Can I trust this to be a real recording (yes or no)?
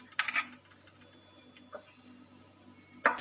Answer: yes